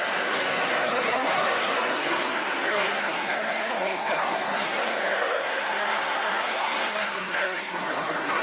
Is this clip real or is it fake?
fake